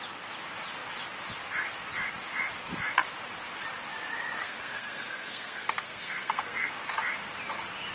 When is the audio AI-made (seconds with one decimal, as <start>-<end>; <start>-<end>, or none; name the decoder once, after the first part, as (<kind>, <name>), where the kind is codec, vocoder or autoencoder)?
4.4-6.7 (codec, SNAC)